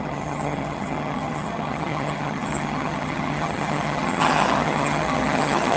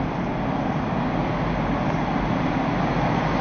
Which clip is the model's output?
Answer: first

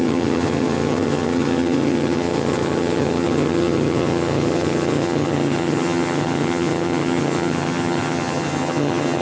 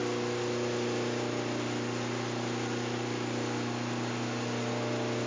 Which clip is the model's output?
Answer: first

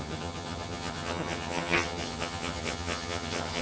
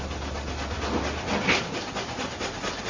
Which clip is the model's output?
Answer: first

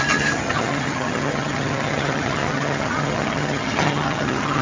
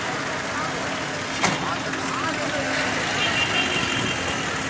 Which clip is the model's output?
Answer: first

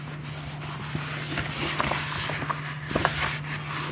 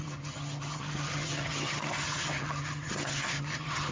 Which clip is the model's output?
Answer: second